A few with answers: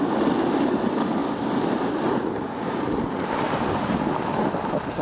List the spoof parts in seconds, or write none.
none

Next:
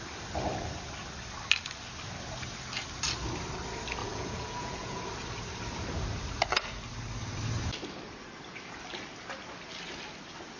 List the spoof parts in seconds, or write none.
4.0-5.0

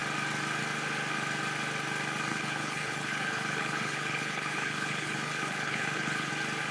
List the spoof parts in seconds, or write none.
2.3-6.3

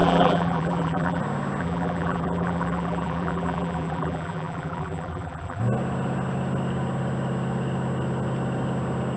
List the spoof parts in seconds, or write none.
0.0-1.2; 1.6-5.6